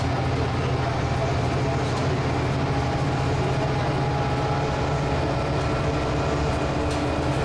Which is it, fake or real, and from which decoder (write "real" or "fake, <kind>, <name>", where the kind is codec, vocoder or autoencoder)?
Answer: real